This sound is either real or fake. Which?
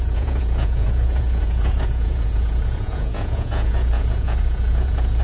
fake